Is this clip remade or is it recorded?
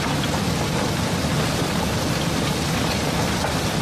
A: recorded